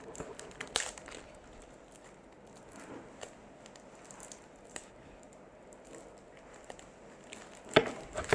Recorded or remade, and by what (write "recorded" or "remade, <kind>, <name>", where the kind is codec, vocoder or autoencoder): recorded